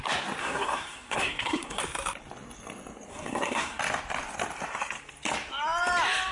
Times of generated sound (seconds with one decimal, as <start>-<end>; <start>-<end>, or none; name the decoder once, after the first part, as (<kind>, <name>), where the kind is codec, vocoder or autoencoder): 0.4-1.8 (codec, SNAC); 3.1-3.8